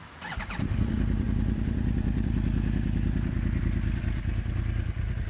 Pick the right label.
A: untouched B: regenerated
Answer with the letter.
B